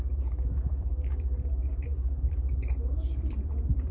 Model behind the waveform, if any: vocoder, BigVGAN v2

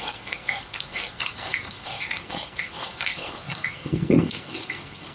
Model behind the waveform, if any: codec, SNAC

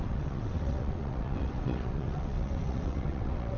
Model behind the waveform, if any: vocoder, WaveNeXt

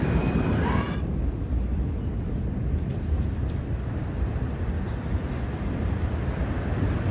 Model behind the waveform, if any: none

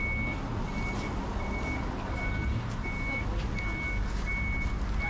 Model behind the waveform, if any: none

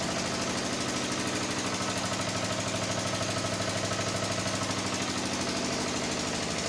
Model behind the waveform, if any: none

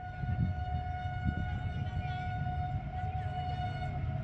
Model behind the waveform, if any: none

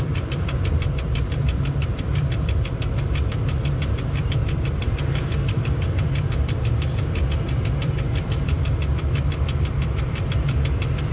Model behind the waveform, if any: vocoder, BigVGAN v2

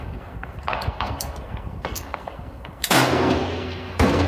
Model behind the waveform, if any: codec, SNAC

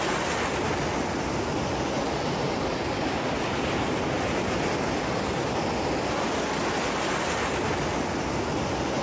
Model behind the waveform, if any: none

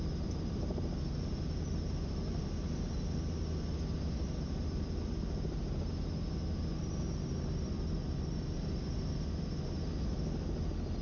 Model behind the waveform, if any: none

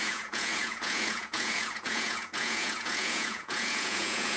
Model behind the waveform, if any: vocoder, Vocos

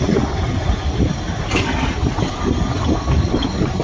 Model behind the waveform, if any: none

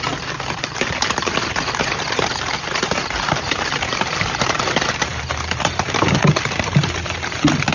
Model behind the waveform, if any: vocoder, BigVGAN v2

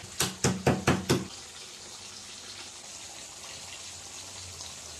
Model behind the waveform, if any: none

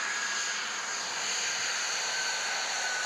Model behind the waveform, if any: none